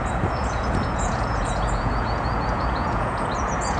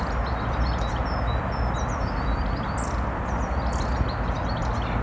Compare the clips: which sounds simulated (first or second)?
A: first